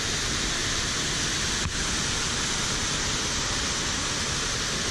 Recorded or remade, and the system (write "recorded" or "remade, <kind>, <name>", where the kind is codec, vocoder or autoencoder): recorded